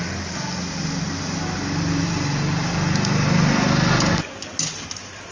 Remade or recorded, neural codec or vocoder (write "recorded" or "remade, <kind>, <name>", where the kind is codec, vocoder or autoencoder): recorded